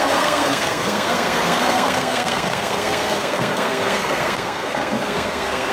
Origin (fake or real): fake